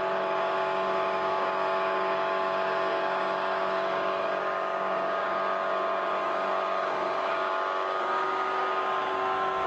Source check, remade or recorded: remade